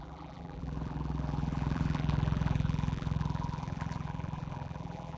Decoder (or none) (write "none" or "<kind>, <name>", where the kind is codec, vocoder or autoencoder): vocoder, BigVGAN v2